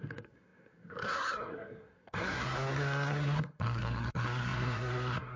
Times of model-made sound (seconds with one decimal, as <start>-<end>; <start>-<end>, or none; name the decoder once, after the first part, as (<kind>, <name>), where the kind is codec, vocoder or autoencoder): 0.0-5.4 (codec, SNAC)